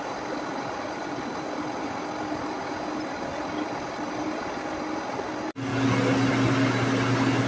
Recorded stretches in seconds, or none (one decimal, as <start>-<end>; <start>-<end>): 0.0-3.3; 5.3-7.5